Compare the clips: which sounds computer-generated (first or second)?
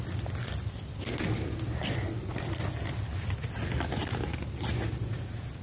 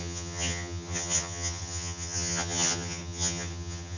second